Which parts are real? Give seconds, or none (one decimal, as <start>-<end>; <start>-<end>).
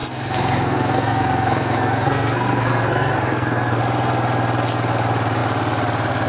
3.8-6.3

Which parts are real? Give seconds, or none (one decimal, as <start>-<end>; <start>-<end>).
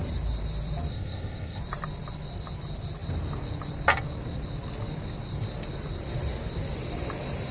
0.0-0.9; 1.6-7.5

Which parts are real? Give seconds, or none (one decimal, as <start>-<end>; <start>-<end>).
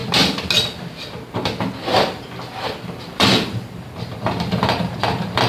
0.0-1.9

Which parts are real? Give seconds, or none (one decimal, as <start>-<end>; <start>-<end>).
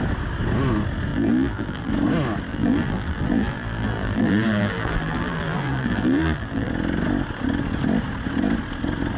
0.0-1.1; 1.9-2.5; 6.7-9.2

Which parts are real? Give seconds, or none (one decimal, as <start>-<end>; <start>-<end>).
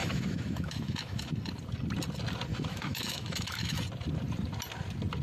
1.3-2.5; 3.8-5.2